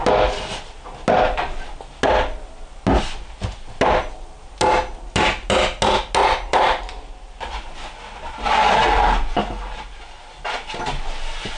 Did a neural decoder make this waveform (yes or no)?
no